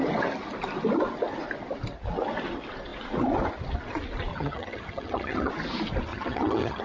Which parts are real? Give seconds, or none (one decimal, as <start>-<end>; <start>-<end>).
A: 0.0-4.3; 5.5-6.1